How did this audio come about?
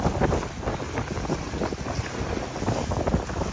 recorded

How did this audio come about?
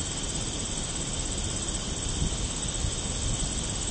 recorded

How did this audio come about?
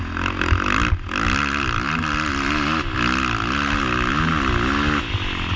recorded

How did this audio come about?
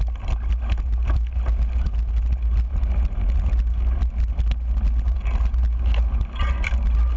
recorded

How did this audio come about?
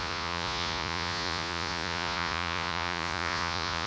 remade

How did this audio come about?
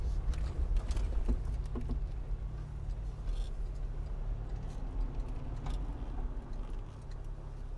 recorded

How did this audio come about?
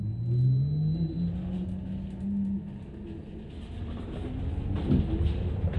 recorded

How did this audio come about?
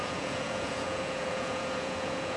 remade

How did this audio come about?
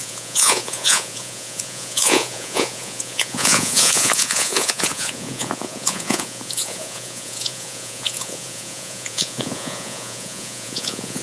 remade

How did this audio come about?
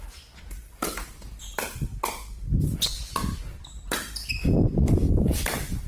recorded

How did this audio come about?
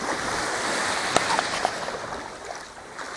recorded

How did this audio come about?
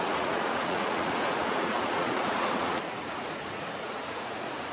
remade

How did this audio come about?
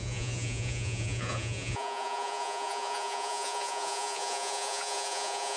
remade